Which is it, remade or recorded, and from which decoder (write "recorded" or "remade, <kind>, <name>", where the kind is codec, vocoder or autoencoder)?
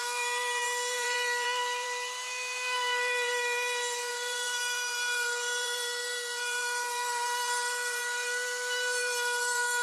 remade, vocoder, BigVGAN v2